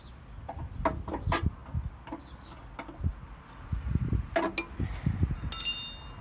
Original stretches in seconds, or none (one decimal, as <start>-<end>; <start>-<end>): 0.0-6.2